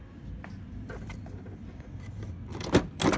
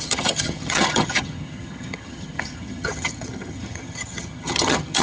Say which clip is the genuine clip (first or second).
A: first